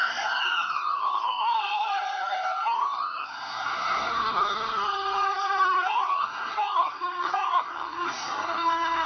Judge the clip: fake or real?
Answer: fake